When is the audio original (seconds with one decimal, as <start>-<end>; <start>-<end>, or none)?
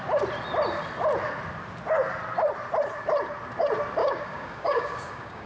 0.0-4.0